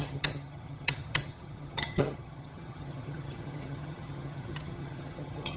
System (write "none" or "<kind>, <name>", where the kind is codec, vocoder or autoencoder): vocoder, HiFi-GAN